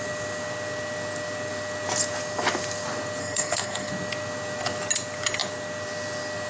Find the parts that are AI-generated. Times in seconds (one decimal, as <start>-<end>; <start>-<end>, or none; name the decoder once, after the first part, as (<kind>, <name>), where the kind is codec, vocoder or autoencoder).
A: 3.2-3.9 (codec, SNAC)